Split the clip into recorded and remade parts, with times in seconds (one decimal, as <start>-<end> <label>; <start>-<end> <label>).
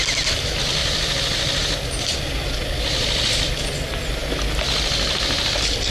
0.0-5.9 recorded